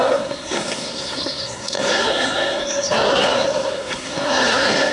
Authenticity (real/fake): fake